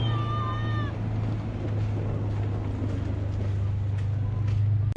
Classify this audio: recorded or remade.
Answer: recorded